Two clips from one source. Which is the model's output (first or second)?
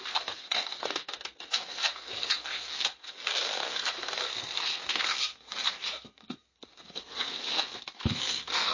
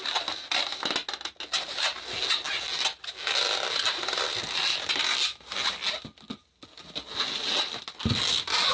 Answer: first